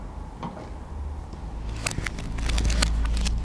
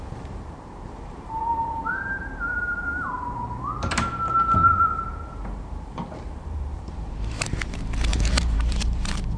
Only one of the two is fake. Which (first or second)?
second